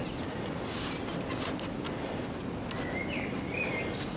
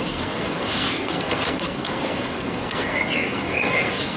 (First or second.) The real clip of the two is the first